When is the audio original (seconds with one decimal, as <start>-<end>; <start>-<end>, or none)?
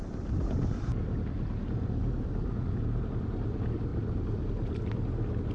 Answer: 0.0-2.0; 3.1-5.5